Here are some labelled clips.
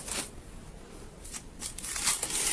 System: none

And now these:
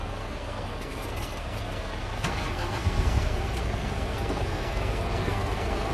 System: codec, SNAC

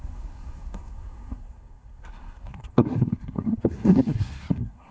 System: codec, SNAC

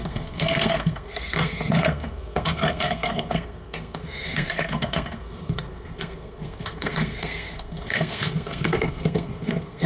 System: codec, SNAC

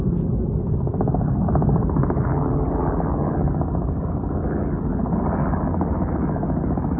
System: none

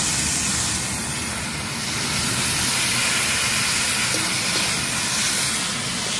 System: none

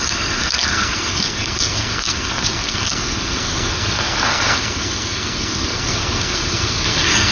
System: codec, SNAC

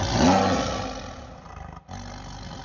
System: none